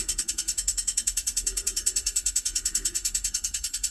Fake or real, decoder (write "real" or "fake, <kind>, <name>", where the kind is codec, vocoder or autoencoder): fake, codec, SNAC